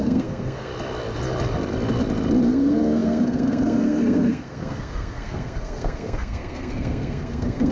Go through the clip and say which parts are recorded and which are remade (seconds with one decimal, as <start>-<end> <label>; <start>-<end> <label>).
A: 0.0-0.7 remade; 0.7-2.5 recorded; 2.5-7.7 remade

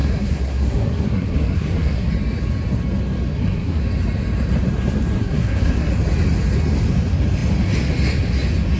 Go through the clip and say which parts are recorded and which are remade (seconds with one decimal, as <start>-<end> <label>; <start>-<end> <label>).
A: 0.0-2.1 remade; 2.1-3.3 recorded; 3.3-3.8 remade; 3.8-5.2 recorded; 5.2-5.9 remade; 5.9-8.8 recorded

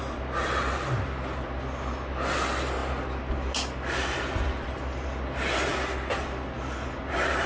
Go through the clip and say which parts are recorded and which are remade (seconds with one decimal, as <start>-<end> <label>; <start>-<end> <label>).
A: 0.0-7.5 recorded

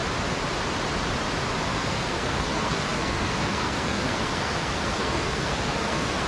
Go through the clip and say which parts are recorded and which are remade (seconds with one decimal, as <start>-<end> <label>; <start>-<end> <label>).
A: 0.0-1.6 recorded; 1.6-6.3 remade